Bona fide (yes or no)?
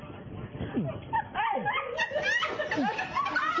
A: yes